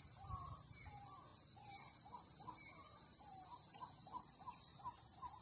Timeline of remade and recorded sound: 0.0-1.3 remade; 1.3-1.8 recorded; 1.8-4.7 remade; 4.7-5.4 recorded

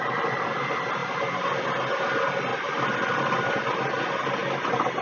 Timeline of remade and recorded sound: 0.0-1.0 recorded; 1.0-1.7 remade; 1.7-2.5 recorded; 2.5-3.3 remade; 3.3-5.0 recorded

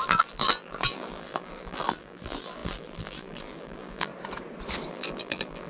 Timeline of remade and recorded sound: 0.0-4.1 remade; 4.1-4.9 recorded; 4.9-5.7 remade

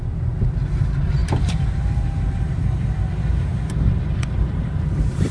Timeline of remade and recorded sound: 0.0-1.2 recorded; 1.2-1.7 remade; 1.7-5.3 recorded